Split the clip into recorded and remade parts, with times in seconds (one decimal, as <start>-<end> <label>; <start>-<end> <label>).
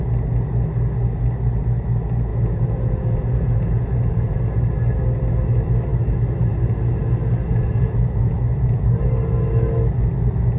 0.0-2.3 recorded; 2.3-4.4 remade; 4.4-7.6 recorded; 7.6-8.9 remade; 8.9-10.6 recorded